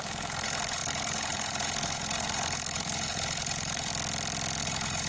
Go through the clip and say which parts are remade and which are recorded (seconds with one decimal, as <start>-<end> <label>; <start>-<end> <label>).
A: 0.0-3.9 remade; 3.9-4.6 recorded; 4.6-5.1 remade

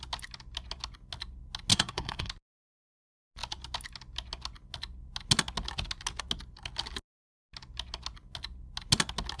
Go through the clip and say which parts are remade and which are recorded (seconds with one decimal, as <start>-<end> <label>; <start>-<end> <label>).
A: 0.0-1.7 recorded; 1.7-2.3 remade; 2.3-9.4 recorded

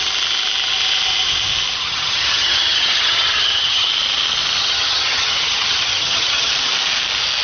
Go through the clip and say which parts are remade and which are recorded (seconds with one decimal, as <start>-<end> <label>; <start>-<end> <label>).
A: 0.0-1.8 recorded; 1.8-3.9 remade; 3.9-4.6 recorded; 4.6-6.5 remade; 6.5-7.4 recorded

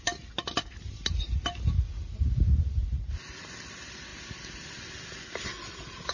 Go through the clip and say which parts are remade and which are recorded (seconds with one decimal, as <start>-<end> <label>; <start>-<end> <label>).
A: 0.0-6.1 recorded